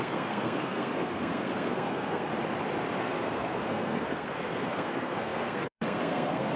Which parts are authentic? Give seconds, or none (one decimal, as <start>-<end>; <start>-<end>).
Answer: 2.3-3.0

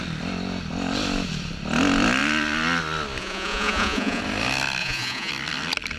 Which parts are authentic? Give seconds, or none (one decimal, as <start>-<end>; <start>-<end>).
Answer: 0.0-3.2; 4.2-4.8; 5.3-6.0

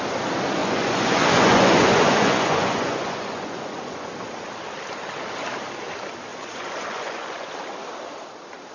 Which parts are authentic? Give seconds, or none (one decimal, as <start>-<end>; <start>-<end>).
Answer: 0.0-0.6; 4.1-6.3; 7.5-8.7

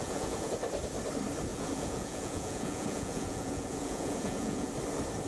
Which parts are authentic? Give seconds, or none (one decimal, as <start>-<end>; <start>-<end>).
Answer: 0.5-1.5; 4.7-5.3